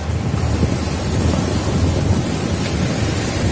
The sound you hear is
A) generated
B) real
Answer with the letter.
B